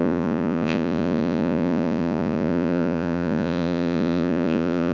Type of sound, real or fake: fake